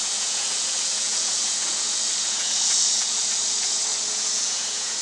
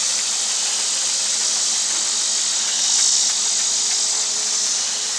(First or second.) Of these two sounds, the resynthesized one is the first